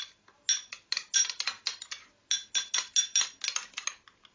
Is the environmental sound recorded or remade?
recorded